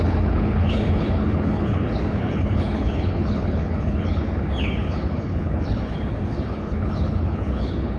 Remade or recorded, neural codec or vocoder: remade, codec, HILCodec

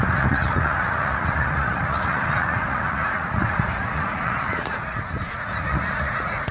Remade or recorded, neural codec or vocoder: remade, vocoder, Vocos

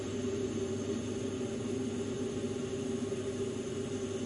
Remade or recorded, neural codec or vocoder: recorded